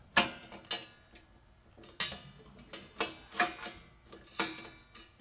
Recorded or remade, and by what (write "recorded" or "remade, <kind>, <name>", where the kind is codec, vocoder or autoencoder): recorded